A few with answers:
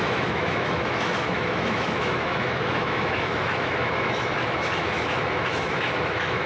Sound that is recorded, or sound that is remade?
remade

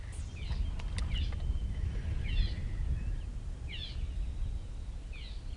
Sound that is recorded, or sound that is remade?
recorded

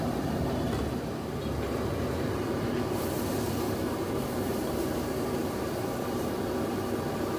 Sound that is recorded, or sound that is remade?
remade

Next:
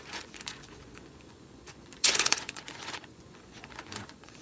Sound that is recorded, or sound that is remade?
remade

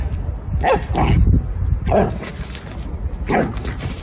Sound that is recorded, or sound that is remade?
recorded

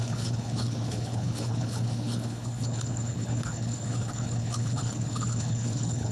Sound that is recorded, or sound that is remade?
remade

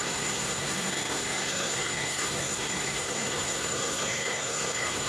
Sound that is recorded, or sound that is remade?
remade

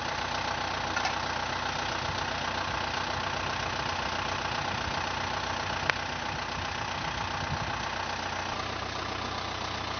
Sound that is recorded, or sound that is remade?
recorded